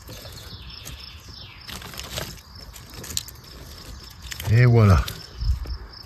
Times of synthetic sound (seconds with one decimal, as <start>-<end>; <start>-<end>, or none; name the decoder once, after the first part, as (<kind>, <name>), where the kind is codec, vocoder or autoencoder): 0.0-1.5 (vocoder, Vocos); 4.0-5.2